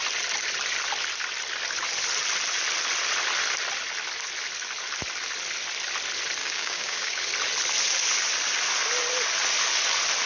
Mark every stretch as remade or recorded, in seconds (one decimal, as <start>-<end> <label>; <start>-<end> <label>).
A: 0.0-6.4 recorded; 6.4-7.2 remade; 7.2-10.3 recorded